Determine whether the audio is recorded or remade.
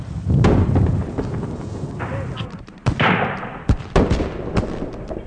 recorded